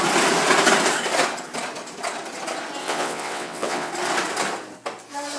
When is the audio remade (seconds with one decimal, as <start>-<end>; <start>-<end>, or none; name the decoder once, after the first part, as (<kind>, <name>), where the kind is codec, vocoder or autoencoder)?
2.8-3.9 (vocoder, WaveNeXt)